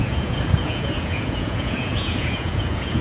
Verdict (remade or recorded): remade